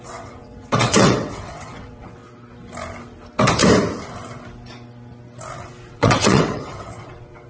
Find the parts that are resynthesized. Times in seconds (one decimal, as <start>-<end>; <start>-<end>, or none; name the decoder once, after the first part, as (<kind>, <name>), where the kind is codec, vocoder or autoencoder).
0.0-2.2 (vocoder, WaveNeXt); 5.9-7.5